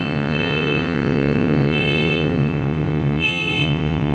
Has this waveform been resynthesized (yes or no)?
yes